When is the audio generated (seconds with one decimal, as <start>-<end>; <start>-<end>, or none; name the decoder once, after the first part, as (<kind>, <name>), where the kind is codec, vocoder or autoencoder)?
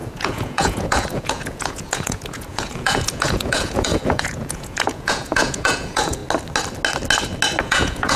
0.0-6.2 (vocoder, Vocos); 7.6-8.2